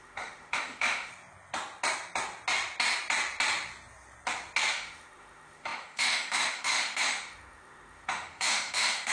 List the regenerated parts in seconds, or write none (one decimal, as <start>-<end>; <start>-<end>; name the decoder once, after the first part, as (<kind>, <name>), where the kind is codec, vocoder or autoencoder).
0.0-1.1 (autoencoder, DAC-VAE); 4.7-9.1